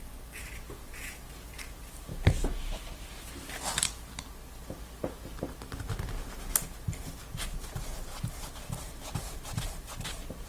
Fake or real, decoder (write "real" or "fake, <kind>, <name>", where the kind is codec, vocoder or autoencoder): real